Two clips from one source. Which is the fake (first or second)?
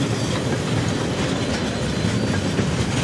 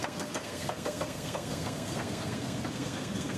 second